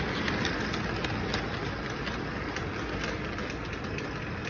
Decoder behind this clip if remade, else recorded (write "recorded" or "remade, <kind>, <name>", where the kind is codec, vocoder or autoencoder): recorded